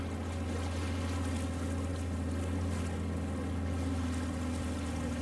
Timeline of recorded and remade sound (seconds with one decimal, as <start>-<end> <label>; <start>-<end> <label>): 0.0-5.2 recorded